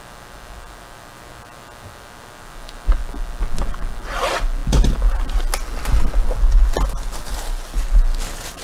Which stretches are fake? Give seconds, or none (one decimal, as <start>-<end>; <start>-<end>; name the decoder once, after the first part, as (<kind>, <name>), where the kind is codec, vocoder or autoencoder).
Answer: none